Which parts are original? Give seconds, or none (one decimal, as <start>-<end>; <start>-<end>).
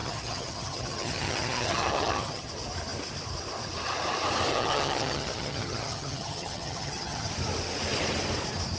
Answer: 2.5-4.5; 7.3-8.8